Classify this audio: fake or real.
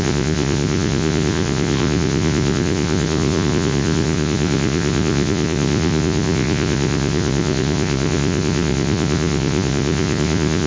fake